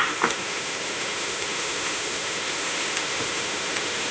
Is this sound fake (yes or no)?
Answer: yes